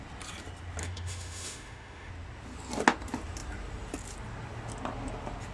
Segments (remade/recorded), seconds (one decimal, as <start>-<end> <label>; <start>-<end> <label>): 0.0-0.8 recorded; 0.8-2.1 remade; 2.1-5.5 recorded